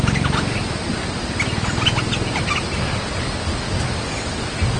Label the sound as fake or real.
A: real